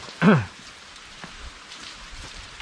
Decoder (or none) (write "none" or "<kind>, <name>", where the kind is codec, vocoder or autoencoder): vocoder, BigVGAN v2